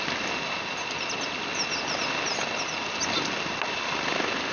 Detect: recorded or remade recorded